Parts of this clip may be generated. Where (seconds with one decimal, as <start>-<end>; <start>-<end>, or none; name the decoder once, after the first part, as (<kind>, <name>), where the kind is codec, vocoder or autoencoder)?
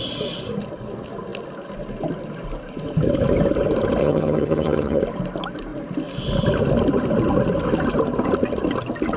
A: 4.0-5.0 (vocoder, HiFi-GAN)